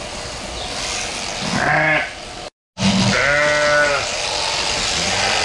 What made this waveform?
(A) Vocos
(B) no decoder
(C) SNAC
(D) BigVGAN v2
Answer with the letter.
B